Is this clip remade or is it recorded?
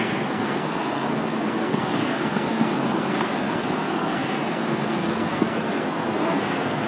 remade